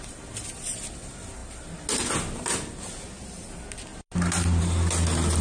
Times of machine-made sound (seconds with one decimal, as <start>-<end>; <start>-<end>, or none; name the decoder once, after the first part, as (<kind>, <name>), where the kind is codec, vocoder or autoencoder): none